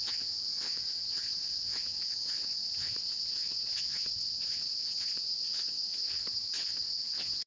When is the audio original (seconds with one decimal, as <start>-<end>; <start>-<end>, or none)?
none